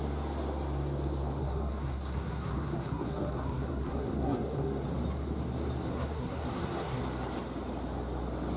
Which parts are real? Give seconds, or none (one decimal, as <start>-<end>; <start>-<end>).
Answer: 0.0-1.4; 4.8-5.9; 7.0-8.6